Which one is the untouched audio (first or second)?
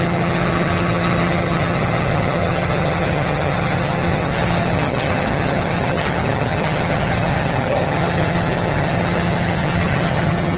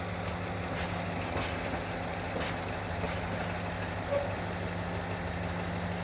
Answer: second